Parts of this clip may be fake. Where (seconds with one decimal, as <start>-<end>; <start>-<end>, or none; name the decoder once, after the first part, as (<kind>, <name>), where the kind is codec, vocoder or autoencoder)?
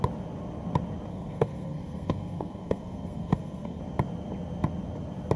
1.1-3.8 (codec, SNAC)